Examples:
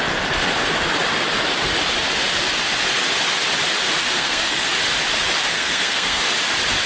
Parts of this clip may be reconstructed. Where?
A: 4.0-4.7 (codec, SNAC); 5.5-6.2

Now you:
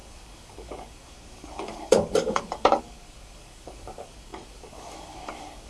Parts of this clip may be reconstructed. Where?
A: 0.0-5.7 (codec, DAC)

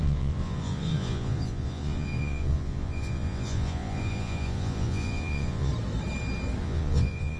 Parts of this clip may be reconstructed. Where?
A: 0.0-5.7 (vocoder, Vocos); 6.6-7.4

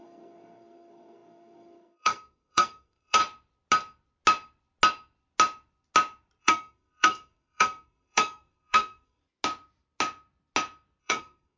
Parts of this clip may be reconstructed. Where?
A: 0.0-3.2 (codec, SNAC); 6.4-9.2; 11.0-11.6

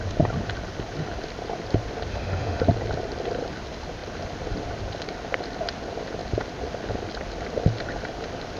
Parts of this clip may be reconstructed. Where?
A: 2.1-2.6 (autoencoder, DAC-VAE)

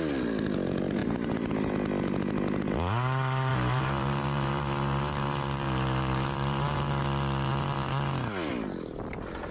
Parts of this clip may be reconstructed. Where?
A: 1.0-1.5 (vocoder, BigVGAN v2); 3.5-6.9

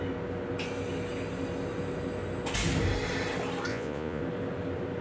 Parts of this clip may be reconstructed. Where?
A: 3.7-4.2 (vocoder, Vocos)